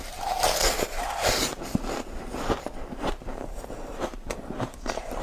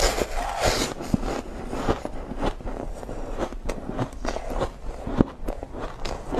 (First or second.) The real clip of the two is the second